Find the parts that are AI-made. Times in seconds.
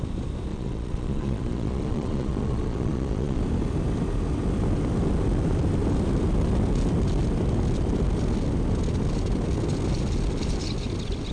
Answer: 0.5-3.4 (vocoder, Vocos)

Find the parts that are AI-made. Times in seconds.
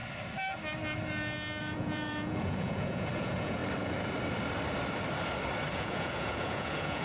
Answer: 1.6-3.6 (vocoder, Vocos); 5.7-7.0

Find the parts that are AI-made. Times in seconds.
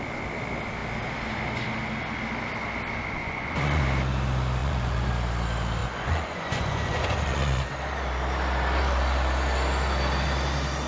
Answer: 3.2-3.8 (vocoder, Vocos); 4.6-5.1; 5.8-7.6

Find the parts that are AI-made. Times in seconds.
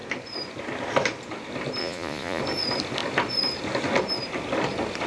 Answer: 1.8-2.4 (vocoder, Vocos)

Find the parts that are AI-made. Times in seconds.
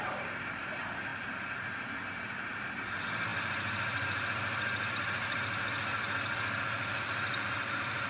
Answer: none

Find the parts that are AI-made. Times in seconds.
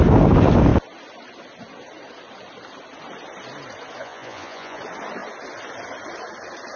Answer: 4.0-4.8 (vocoder, Vocos)